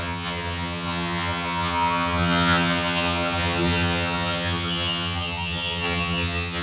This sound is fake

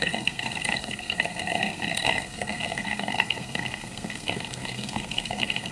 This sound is fake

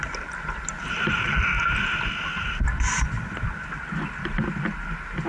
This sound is real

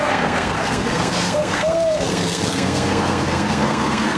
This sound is fake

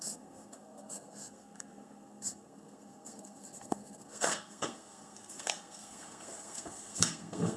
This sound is fake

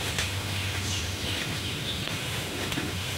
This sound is fake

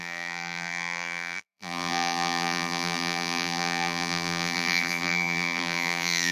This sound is fake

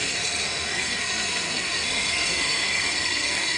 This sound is fake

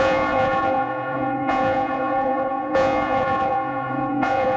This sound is fake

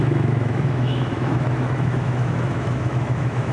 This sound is fake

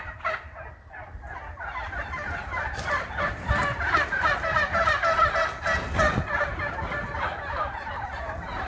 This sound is real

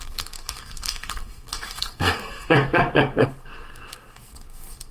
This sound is fake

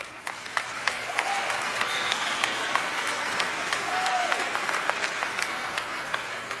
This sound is fake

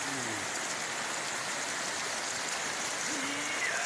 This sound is real